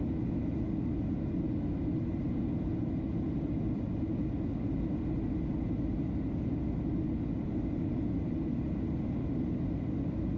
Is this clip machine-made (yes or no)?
no